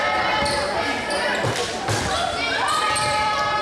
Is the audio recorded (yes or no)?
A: no